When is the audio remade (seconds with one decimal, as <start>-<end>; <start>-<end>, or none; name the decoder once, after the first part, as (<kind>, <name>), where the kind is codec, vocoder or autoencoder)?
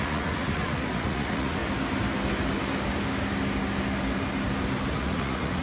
0.0-1.6 (vocoder, Vocos); 4.9-5.6